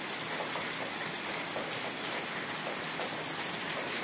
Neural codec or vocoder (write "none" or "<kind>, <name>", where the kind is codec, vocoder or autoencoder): none